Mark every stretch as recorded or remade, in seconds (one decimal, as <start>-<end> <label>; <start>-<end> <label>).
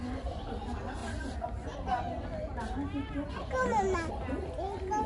0.0-5.1 recorded